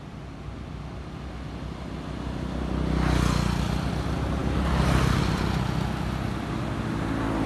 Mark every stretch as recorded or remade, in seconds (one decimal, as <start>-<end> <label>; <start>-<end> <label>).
0.0-7.5 recorded